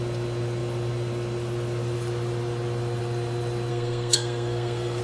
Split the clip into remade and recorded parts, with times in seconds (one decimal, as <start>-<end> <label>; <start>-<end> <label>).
0.0-3.7 recorded; 3.7-5.0 remade